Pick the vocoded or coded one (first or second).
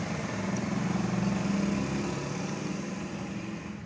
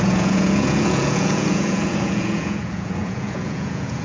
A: second